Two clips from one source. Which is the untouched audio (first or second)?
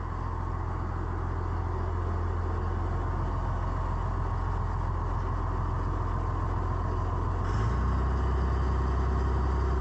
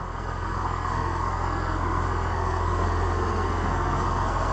first